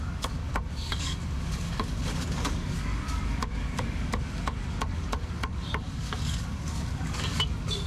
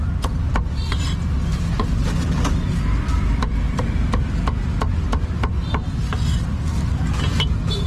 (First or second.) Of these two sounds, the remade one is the first